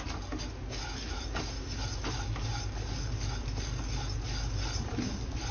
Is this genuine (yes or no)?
yes